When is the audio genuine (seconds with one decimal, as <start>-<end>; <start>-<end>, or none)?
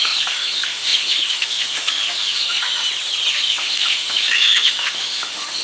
2.8-3.3